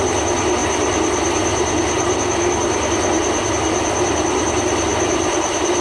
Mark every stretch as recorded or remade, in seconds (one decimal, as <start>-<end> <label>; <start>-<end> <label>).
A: 0.0-4.9 recorded; 4.9-5.8 remade